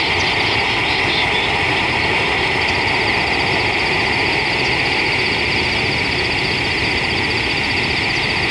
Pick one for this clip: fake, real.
real